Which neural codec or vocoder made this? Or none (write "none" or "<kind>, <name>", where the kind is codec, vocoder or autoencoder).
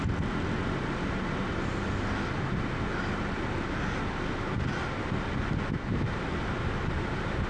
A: none